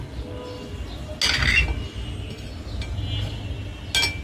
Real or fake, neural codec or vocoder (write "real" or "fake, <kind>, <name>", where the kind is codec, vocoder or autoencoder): real